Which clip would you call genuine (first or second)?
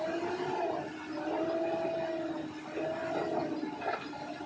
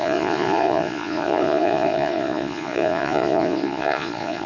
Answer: first